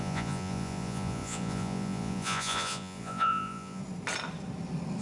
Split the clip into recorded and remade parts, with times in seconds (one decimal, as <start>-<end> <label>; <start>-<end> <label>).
0.0-3.8 remade; 3.8-5.0 recorded